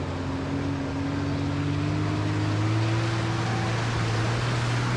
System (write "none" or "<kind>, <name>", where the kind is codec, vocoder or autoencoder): none